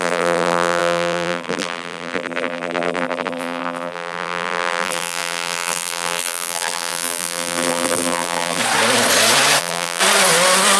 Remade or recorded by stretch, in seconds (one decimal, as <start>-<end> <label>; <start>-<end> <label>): 0.0-8.6 remade; 8.6-9.6 recorded; 9.6-10.0 remade; 10.0-10.8 recorded